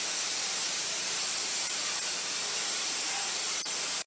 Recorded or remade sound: remade